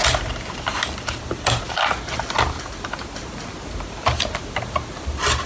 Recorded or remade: recorded